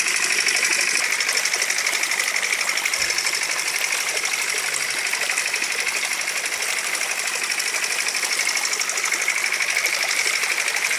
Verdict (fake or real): real